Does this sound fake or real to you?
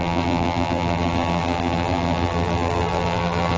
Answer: fake